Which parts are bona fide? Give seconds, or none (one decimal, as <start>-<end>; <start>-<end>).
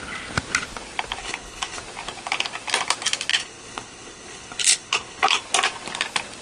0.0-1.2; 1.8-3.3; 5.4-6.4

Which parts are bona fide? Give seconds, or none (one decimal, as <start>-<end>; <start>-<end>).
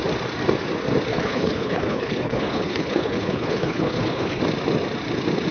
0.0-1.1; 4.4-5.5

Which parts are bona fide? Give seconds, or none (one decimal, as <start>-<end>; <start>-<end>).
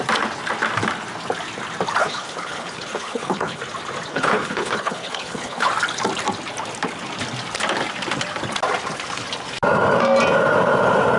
0.0-2.0; 3.6-4.1; 5.7-11.2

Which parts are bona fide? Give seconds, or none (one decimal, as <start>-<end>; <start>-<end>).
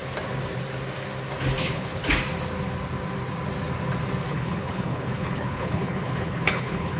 0.0-1.6; 2.0-4.3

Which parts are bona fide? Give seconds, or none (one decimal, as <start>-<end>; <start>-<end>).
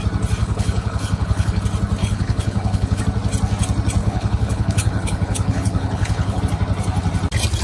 0.0-0.4; 1.6-2.0; 3.0-4.0; 6.4-7.6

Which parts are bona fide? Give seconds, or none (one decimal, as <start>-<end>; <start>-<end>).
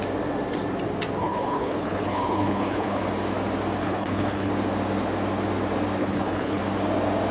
0.0-1.2; 3.0-3.8; 4.5-6.0; 6.6-7.3